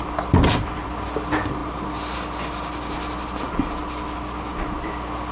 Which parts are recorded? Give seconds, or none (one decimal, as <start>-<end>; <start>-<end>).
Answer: 0.0-5.3